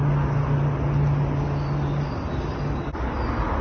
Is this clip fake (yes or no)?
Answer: no